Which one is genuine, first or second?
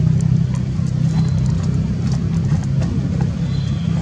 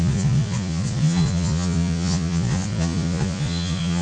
first